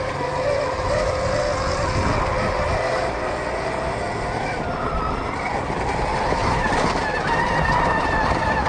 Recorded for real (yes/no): yes